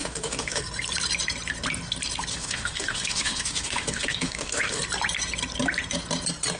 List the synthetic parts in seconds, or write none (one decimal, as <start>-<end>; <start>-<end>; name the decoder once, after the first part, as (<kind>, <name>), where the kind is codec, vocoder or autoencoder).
0.0-0.6 (autoencoder, DAC-VAE); 2.3-4.8